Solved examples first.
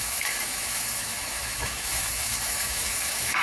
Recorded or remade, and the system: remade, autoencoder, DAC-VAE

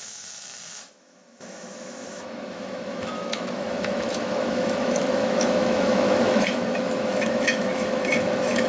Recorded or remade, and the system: remade, autoencoder, DAC-VAE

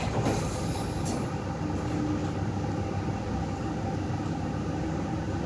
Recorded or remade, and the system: recorded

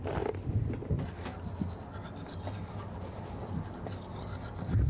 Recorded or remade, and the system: recorded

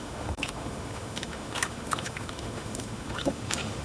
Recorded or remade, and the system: remade, autoencoder, DAC-VAE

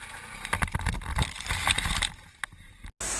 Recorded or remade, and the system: recorded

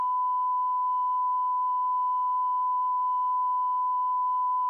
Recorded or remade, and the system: remade, autoencoder, DAC-VAE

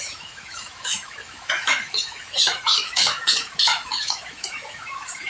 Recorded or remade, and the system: remade, autoencoder, DAC-VAE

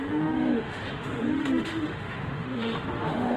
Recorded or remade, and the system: remade, autoencoder, DAC-VAE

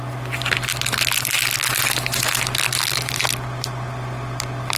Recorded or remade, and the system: recorded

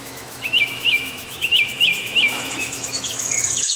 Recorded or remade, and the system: remade, autoencoder, DAC-VAE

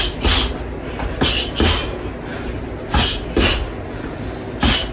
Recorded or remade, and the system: recorded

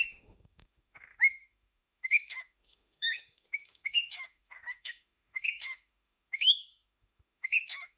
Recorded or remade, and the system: remade, autoencoder, DAC-VAE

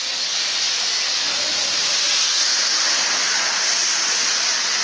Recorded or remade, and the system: recorded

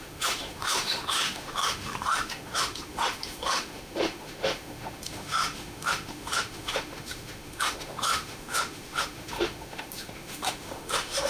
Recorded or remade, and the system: remade, autoencoder, DAC-VAE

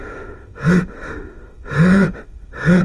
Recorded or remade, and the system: remade, autoencoder, DAC-VAE